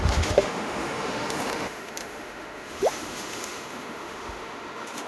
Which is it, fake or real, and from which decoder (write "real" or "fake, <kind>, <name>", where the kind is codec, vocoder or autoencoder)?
fake, autoencoder, DAC-VAE